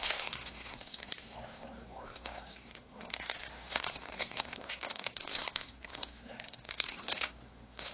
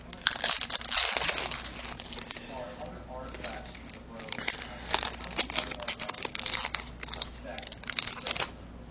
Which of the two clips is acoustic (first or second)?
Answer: second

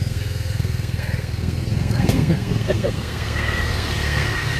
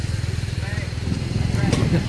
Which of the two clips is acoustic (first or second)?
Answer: second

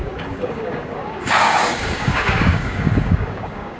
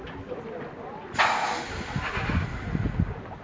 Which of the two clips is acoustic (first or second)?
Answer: second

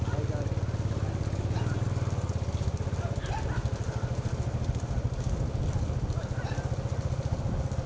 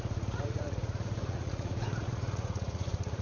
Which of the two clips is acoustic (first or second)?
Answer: first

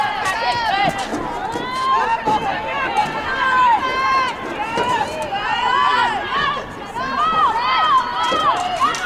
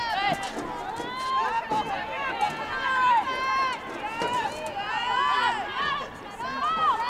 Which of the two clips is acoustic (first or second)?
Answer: second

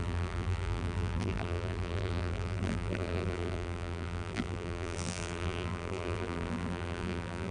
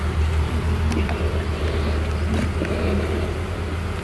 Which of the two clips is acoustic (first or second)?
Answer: second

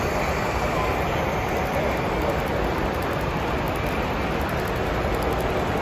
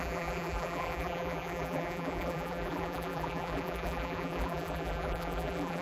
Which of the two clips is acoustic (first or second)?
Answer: first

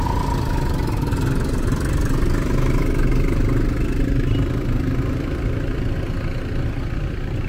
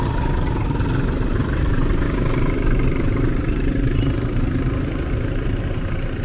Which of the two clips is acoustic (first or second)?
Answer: first